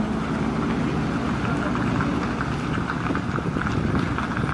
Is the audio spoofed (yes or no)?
no